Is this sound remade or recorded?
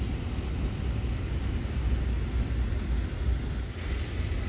recorded